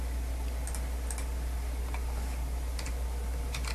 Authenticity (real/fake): fake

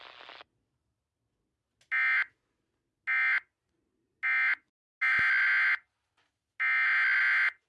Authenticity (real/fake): real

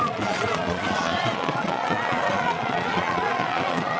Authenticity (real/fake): fake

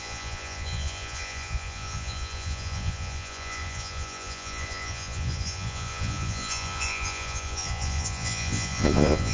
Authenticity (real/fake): fake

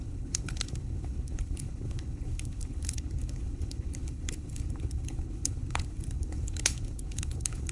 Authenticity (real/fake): fake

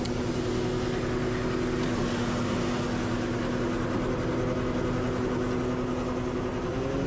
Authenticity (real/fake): real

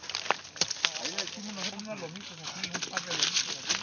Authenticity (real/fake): real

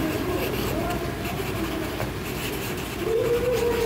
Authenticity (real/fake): real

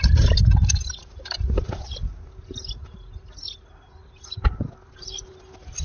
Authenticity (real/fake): real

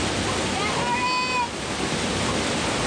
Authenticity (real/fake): real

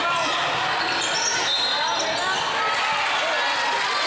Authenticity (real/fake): real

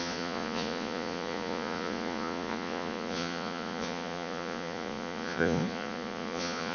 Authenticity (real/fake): fake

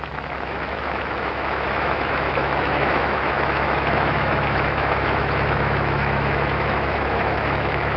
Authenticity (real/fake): fake